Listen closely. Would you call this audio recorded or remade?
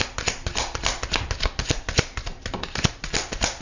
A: recorded